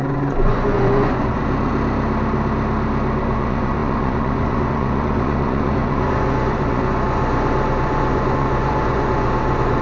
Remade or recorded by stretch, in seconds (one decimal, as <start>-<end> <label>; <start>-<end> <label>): 0.0-1.7 remade; 1.7-3.2 recorded; 3.2-9.8 remade